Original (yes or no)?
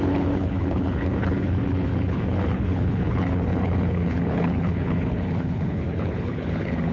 no